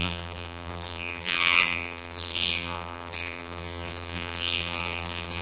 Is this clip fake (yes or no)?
yes